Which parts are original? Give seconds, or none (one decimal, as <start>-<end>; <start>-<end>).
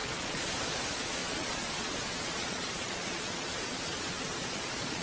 none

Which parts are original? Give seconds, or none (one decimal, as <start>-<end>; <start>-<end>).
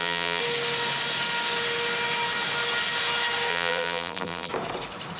0.4-3.5; 4.5-5.2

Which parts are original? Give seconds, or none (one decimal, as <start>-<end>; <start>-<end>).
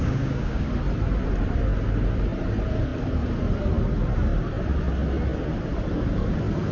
0.7-6.7